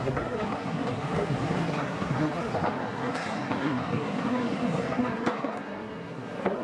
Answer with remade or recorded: remade